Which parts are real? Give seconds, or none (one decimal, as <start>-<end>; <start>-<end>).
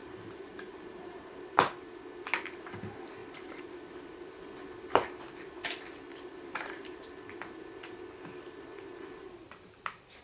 1.7-3.2; 4.2-6.1; 7.1-10.2